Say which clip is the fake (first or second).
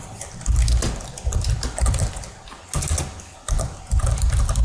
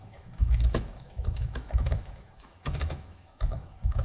second